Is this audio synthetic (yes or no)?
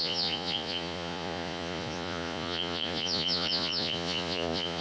yes